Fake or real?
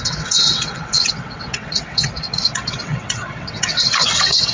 fake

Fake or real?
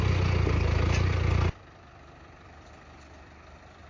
real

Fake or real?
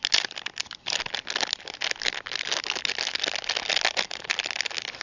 real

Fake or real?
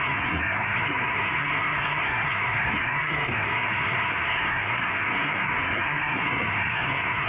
fake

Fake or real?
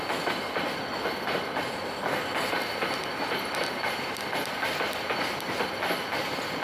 real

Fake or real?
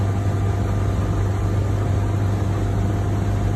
real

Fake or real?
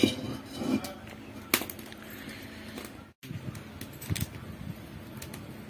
real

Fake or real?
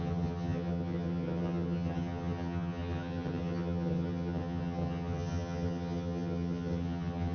fake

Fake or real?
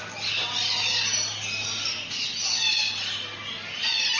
real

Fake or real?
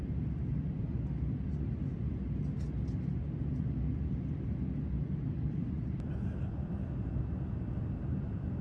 real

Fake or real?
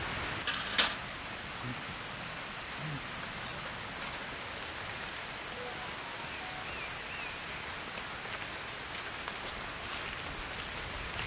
real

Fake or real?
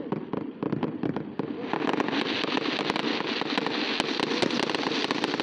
real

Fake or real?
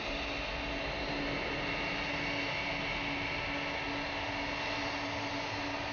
real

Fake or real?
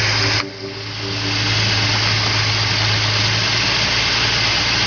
real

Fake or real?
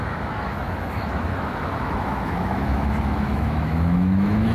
fake